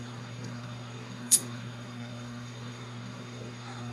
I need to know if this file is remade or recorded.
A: remade